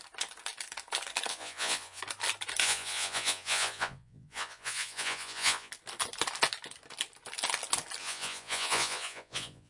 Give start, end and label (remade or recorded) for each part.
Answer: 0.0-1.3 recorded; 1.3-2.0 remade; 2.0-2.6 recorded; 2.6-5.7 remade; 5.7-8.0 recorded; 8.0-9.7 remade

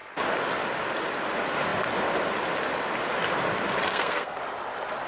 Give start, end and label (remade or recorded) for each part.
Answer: 0.0-3.9 recorded; 3.9-4.4 remade; 4.4-5.1 recorded

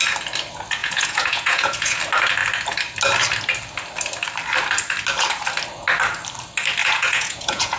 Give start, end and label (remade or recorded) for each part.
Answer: 0.0-0.8 recorded; 0.8-2.0 remade; 2.0-6.8 recorded; 6.8-7.8 remade

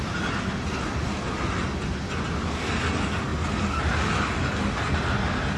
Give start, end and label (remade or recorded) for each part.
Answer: 0.0-5.6 recorded

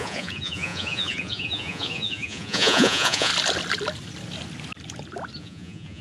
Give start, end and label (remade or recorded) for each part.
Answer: 0.0-3.3 remade; 3.3-5.4 recorded; 5.4-6.0 remade